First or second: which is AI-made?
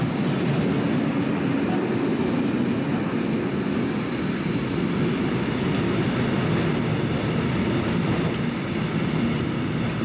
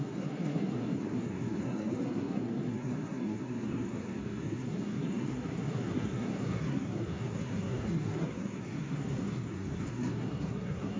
second